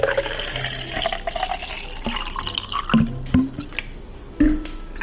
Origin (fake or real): real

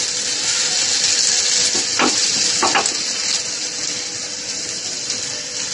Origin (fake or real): real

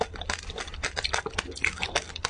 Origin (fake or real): real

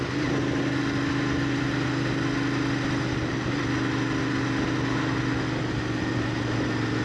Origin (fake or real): real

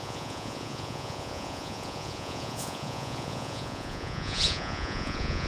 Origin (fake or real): fake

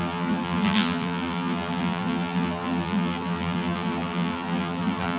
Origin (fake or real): fake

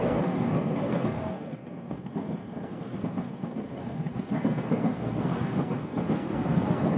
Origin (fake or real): fake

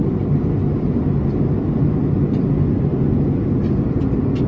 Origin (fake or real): real